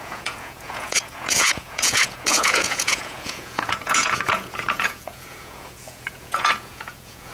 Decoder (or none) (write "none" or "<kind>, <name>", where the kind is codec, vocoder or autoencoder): vocoder, Vocos